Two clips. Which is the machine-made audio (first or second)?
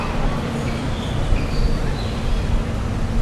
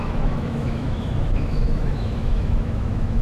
second